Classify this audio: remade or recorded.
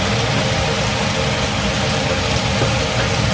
recorded